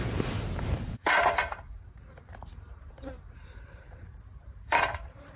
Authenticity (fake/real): fake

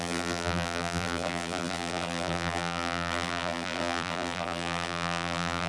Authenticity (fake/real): fake